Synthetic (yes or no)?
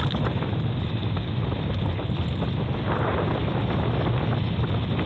no